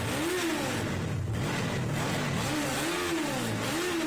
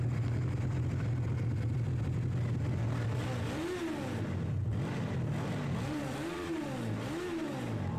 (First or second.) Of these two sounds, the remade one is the second